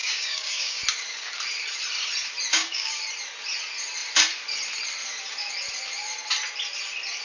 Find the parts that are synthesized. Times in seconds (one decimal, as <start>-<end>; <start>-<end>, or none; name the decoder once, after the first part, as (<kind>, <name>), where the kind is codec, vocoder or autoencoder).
0.0-0.8 (codec, DAC); 2.5-3.0